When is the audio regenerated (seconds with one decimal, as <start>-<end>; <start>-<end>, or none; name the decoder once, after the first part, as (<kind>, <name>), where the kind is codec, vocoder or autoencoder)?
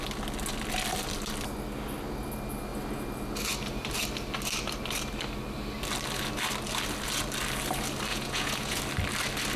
8.1-8.8 (vocoder, Vocos)